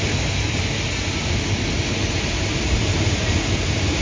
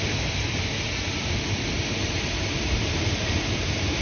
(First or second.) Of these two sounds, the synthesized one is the second